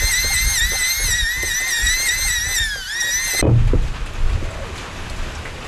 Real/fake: real